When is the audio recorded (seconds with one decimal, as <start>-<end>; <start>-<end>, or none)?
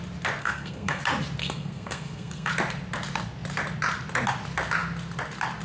0.0-0.4; 1.0-1.4; 2.5-5.6